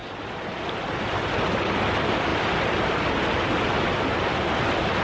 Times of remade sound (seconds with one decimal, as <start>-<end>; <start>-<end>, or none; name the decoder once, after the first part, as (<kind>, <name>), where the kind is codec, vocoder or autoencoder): none